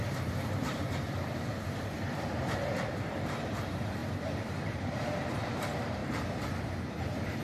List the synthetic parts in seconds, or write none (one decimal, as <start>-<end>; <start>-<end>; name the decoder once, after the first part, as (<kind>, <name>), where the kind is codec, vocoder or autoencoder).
0.0-6.0 (vocoder, BigVGAN v2); 6.6-7.4